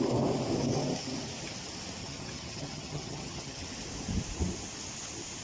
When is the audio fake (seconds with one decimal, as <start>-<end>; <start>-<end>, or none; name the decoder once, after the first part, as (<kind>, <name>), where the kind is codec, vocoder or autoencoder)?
2.0-3.6 (vocoder, HiFi-GAN)